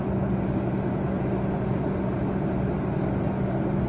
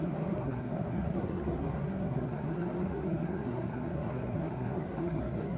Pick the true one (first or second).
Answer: first